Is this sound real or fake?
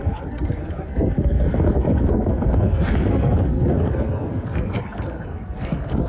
fake